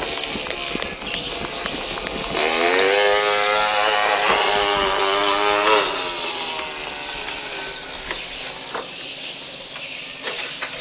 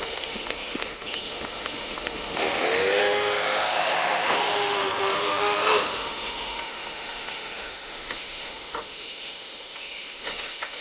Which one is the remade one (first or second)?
second